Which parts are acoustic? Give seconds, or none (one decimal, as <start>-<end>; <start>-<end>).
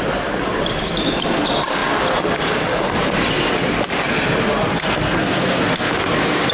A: 0.0-4.7; 5.9-6.5